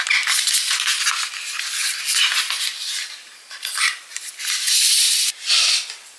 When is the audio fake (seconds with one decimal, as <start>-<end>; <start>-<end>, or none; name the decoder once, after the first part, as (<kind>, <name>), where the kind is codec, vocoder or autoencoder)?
1.8-2.4 (vocoder, BigVGAN v2); 3.2-4.3